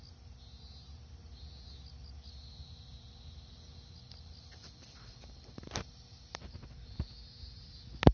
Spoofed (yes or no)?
no